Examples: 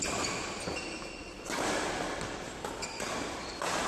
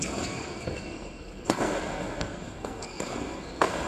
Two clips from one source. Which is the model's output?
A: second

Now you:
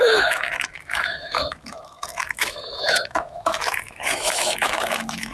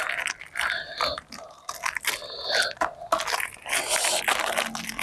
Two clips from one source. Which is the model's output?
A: first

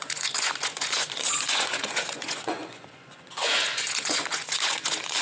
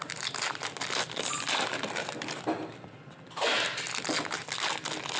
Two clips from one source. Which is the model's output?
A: first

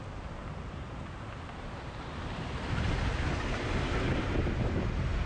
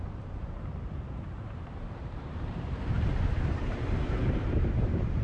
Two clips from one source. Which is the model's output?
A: second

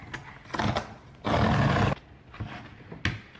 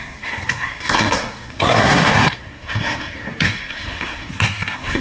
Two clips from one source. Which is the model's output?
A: second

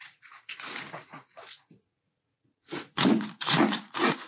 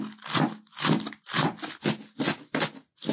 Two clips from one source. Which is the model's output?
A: first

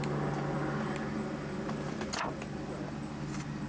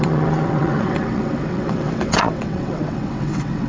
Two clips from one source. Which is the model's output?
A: second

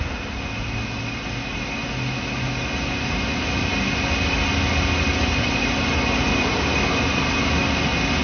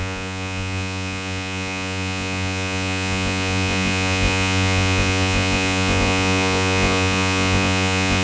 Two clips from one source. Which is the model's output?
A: second